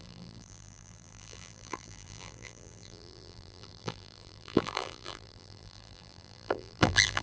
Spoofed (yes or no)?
yes